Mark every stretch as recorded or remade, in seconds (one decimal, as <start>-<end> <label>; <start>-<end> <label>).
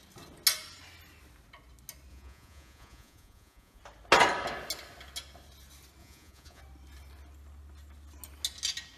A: 0.0-2.1 recorded; 2.1-3.8 remade; 3.8-6.0 recorded; 6.0-6.6 remade; 6.6-9.0 recorded